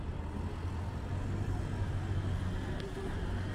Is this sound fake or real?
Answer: real